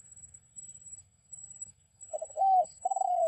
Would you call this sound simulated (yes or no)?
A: yes